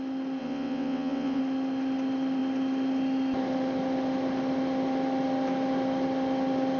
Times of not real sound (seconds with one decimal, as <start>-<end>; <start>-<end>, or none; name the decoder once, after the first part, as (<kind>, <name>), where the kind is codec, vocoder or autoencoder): 0.4-1.4 (vocoder, WaveNeXt)